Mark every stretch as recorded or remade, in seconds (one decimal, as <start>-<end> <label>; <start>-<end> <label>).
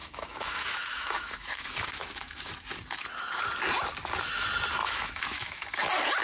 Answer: 0.0-2.5 remade; 2.5-4.8 recorded; 4.8-5.8 remade; 5.8-6.2 recorded